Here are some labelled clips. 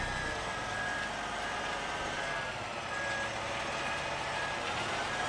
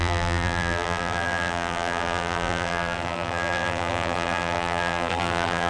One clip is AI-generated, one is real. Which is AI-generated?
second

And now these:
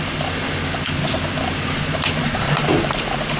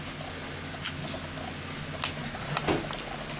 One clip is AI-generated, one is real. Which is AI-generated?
first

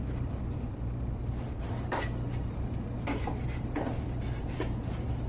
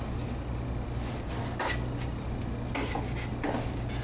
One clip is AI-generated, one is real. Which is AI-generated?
first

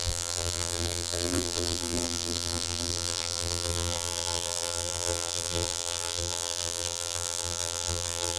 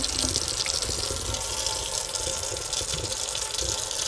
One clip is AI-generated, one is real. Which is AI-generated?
first